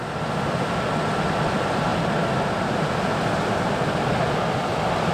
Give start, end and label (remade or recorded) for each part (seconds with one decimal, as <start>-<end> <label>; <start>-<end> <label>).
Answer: 0.0-5.1 recorded